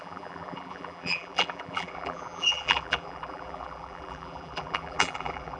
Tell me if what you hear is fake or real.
fake